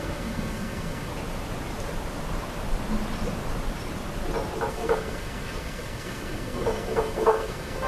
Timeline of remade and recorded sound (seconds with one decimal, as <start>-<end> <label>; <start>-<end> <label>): 0.0-1.1 remade; 1.1-4.7 recorded; 4.7-7.9 remade